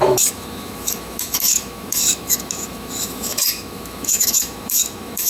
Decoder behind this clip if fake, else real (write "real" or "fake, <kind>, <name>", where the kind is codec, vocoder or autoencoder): fake, autoencoder, DAC-VAE